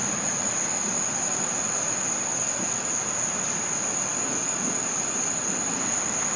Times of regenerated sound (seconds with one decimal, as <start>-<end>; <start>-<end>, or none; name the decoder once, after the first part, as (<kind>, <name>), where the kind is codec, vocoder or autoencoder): none